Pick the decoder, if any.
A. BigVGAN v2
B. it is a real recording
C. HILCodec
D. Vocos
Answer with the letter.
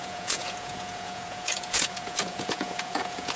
D